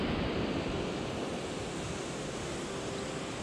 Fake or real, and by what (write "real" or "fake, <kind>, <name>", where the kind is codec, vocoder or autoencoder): real